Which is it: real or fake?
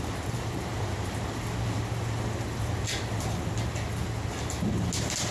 real